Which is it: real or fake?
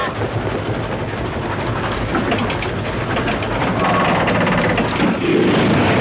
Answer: real